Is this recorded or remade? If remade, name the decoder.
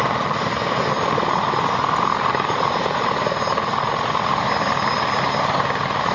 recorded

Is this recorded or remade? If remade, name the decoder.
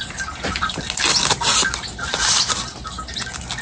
recorded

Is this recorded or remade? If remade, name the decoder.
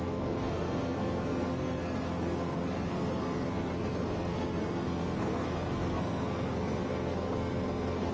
remade, codec, SNAC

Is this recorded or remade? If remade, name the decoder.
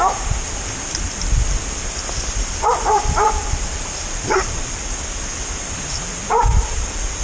remade, vocoder, BigVGAN v2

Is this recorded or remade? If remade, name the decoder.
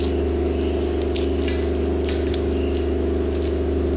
recorded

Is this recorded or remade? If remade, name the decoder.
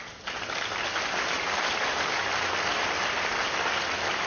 recorded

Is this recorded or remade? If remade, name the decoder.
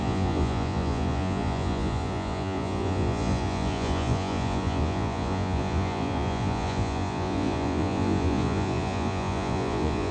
remade, vocoder, Vocos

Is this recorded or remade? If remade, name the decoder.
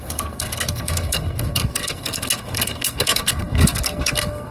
remade, codec, SNAC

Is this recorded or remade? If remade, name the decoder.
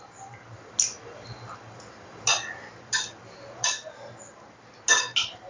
recorded